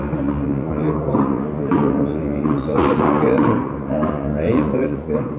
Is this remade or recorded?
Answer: remade